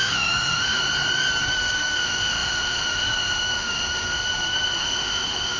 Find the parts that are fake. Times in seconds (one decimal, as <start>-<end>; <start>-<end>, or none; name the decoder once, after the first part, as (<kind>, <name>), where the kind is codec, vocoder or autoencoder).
0.0-0.8 (autoencoder, DAC-VAE); 1.4-5.6